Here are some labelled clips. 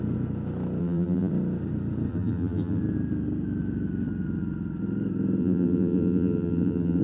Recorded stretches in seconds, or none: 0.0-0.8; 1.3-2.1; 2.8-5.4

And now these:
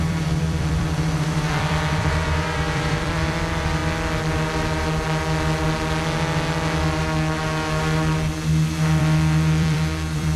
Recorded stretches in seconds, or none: 3.8-9.0